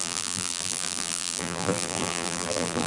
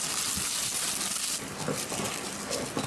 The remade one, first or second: first